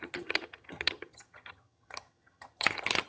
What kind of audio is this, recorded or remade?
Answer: remade